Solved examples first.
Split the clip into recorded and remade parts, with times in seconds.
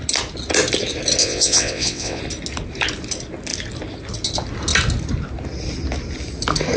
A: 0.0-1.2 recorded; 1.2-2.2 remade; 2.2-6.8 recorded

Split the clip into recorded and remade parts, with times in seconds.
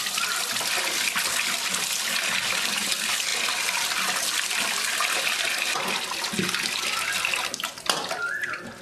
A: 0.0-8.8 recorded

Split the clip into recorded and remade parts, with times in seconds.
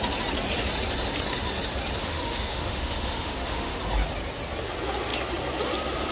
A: 0.0-2.0 recorded; 2.0-3.8 remade; 3.8-6.1 recorded